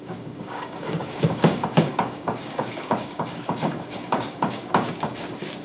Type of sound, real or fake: fake